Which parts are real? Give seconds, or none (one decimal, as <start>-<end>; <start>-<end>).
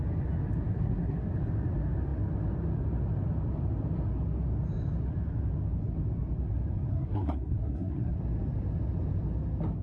0.0-0.7; 1.3-6.9; 8.1-9.8